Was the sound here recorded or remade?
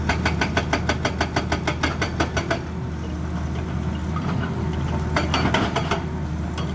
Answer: recorded